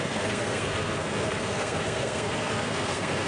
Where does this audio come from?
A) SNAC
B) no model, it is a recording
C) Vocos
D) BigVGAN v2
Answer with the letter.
A